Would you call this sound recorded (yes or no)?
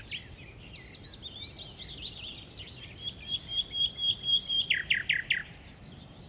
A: yes